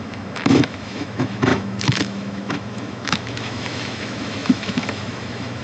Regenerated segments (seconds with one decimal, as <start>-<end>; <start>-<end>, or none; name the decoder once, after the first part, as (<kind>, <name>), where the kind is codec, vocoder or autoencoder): 0.0-5.6 (autoencoder, DAC-VAE)